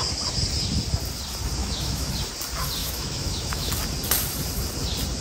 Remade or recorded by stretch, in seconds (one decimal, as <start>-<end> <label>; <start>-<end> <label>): 0.0-1.6 recorded; 1.6-2.1 remade; 2.1-2.8 recorded; 2.8-3.7 remade; 3.7-5.2 recorded